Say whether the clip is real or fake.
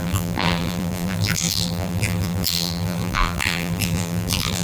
fake